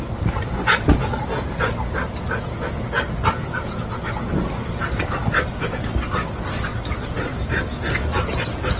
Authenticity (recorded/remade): recorded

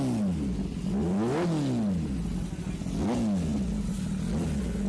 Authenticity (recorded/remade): recorded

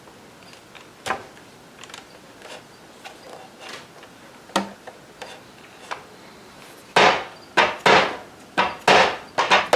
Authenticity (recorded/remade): recorded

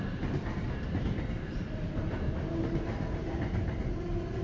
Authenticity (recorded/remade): recorded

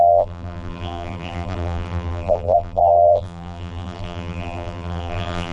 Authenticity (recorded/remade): remade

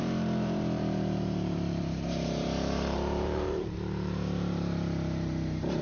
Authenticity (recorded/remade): remade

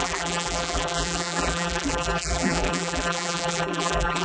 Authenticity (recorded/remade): remade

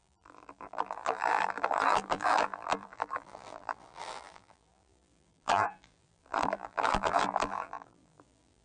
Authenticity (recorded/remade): remade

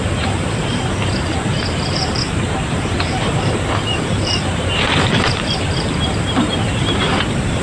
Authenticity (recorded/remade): remade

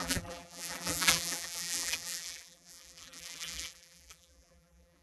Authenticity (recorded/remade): remade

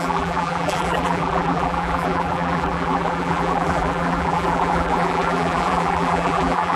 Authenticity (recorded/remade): remade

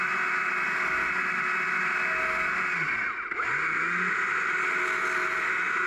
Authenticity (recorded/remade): recorded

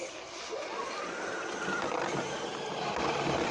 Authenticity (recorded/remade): recorded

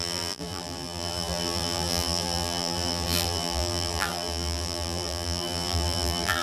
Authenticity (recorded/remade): remade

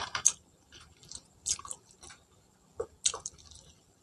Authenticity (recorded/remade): recorded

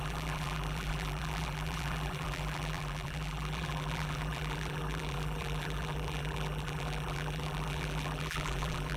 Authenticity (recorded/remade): remade